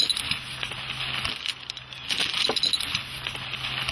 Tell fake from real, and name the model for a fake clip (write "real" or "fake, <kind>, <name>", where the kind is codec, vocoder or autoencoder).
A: real